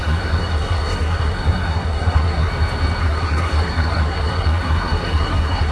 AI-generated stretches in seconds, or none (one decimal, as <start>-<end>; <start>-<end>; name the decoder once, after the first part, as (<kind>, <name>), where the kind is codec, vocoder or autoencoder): 0.0-2.5 (codec, SNAC); 3.0-5.7